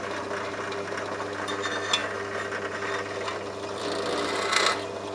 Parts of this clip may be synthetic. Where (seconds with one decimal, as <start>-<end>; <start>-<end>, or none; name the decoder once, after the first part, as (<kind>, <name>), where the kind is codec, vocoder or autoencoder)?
none